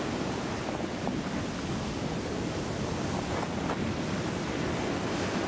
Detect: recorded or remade recorded